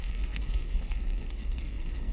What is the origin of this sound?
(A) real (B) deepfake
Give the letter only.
B